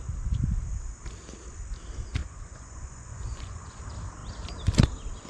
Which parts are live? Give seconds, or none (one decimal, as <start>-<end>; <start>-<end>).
0.0-2.2; 3.8-5.3